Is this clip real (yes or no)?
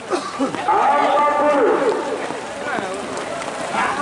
yes